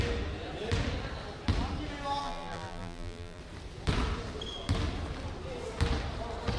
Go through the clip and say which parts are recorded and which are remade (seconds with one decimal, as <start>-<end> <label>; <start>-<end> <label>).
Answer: 0.0-2.2 recorded; 2.2-3.4 remade; 3.4-6.6 recorded